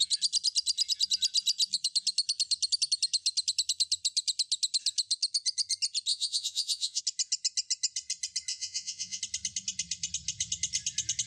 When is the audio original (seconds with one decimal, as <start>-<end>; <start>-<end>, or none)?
0.0-6.1; 7.0-8.5; 9.2-11.3